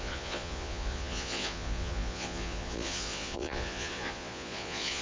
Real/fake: fake